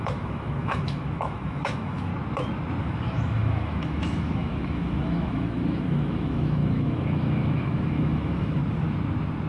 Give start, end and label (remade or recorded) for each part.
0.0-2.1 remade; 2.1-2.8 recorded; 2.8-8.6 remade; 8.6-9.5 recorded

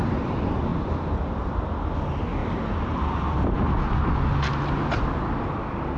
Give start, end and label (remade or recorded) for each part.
0.0-2.4 remade; 2.4-6.0 recorded

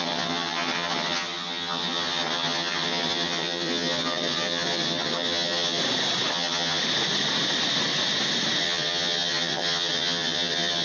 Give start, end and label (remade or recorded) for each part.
0.0-5.8 remade; 5.8-6.3 recorded; 6.3-6.8 remade; 6.8-8.6 recorded; 8.6-10.8 remade

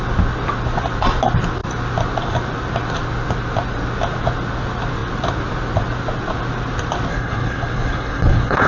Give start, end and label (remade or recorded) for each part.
0.0-7.1 recorded; 7.1-8.7 remade

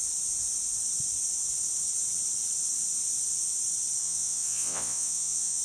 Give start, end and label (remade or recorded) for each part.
0.0-4.0 recorded; 4.0-5.6 remade